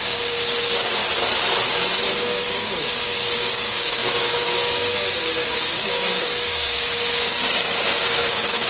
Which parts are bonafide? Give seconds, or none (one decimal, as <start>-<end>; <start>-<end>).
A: 1.0-1.7